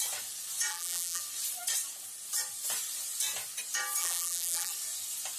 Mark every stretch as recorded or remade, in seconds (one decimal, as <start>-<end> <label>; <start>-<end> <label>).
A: 0.0-0.7 recorded; 0.7-1.2 remade; 1.2-4.0 recorded; 4.0-4.7 remade; 4.7-5.4 recorded